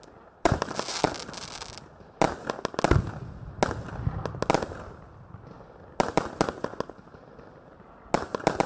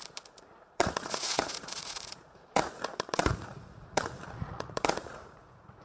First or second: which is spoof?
second